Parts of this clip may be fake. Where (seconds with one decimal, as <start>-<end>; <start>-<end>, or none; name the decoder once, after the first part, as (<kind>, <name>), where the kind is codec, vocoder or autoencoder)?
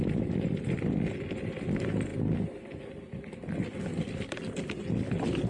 none